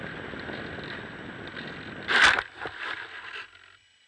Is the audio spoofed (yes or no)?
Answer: no